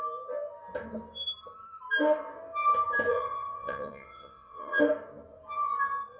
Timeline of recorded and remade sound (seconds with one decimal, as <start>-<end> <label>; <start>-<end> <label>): 0.0-3.1 recorded; 3.1-4.8 remade; 4.8-6.2 recorded